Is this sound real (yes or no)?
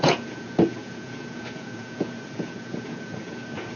no